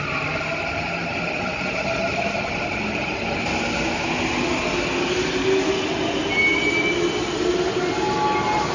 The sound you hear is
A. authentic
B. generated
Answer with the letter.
A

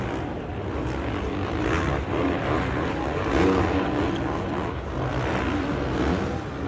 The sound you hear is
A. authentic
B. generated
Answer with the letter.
A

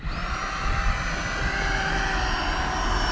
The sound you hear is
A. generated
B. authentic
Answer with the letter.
B